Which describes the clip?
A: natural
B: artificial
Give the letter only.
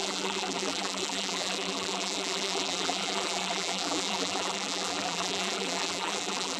B